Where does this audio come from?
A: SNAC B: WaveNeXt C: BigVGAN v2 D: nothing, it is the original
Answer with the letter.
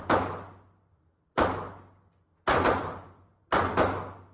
D